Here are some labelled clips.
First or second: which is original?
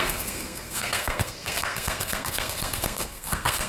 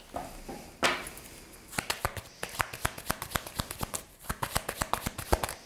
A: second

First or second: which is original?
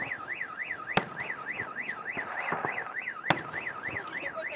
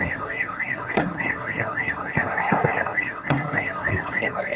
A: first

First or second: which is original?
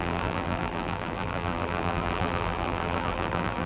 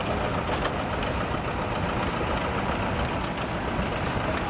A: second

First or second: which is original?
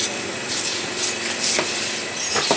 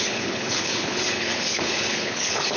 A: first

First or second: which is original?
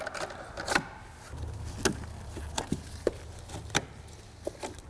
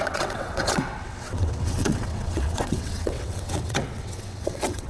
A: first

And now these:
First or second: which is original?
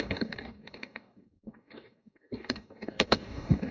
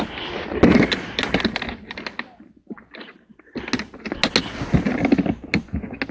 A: second